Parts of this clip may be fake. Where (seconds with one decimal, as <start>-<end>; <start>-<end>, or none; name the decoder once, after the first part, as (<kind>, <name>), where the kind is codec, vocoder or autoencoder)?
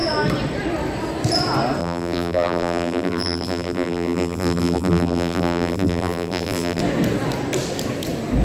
1.8-6.8 (vocoder, BigVGAN v2)